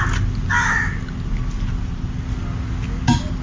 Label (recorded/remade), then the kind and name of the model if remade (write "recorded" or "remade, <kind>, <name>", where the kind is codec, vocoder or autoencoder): recorded